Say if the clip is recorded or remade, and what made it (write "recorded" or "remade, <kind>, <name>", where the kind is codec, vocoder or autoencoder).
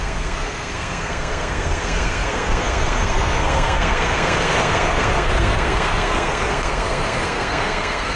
remade, codec, SNAC